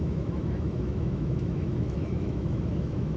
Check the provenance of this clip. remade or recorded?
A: remade